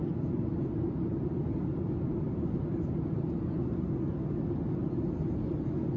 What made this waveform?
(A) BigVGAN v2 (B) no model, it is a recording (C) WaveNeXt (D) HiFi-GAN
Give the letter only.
B